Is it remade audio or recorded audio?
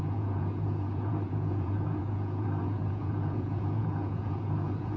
remade